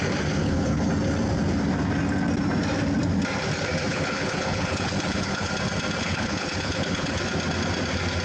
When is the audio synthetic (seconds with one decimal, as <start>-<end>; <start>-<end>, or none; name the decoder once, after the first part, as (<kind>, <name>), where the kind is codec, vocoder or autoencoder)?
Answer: 0.4-0.9 (codec, HILCodec); 3.9-5.5; 6.0-7.2